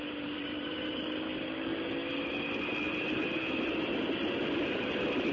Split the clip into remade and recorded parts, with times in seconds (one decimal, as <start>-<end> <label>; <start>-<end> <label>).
0.0-1.7 remade; 1.7-5.3 recorded